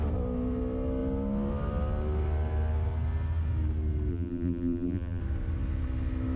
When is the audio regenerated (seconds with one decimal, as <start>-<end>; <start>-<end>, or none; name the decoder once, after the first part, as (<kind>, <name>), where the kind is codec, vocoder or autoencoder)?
4.1-5.2 (vocoder, BigVGAN v2)